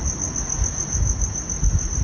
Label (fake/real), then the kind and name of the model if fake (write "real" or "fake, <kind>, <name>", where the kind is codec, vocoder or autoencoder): real